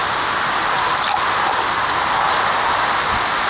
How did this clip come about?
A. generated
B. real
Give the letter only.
B